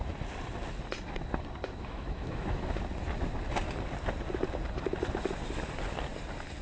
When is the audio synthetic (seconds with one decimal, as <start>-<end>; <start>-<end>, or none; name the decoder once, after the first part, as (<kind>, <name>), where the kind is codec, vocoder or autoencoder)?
1.6-2.8 (autoencoder, DAC-VAE)